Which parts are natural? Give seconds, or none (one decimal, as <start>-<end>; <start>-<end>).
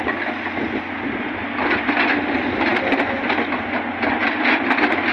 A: 0.0-5.1